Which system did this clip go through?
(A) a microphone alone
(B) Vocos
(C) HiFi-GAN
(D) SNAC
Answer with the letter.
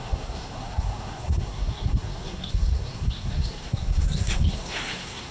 D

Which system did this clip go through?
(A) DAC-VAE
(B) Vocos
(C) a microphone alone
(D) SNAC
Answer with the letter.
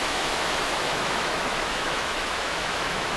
A